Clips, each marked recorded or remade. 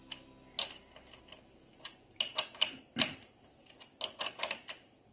recorded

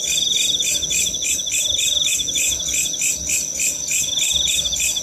recorded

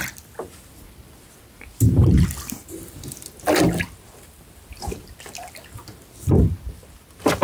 recorded